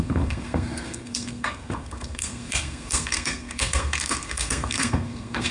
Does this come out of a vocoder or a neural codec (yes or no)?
yes